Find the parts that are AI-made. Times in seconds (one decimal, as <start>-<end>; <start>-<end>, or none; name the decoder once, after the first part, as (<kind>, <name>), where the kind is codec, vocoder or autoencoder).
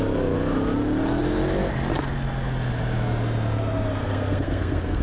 4.0-5.0 (codec, SNAC)